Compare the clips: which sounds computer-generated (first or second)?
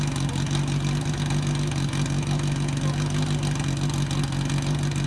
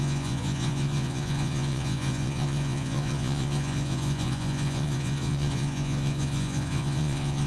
second